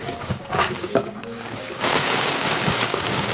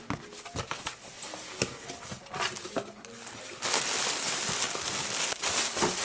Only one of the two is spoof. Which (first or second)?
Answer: first